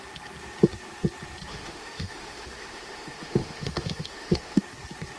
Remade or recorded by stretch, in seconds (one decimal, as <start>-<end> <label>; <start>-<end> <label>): 0.0-1.5 recorded; 1.5-4.6 remade; 4.6-5.2 recorded